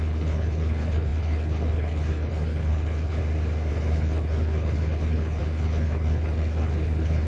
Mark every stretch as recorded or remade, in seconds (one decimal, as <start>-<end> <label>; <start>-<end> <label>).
0.0-3.2 remade; 3.2-3.7 recorded; 3.7-7.3 remade